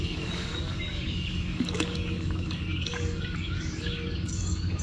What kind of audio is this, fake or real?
fake